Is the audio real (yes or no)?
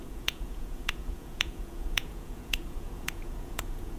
no